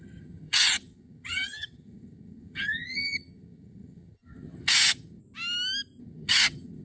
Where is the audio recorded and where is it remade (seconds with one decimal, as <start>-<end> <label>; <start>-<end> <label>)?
0.0-5.2 remade; 5.2-6.0 recorded; 6.0-6.8 remade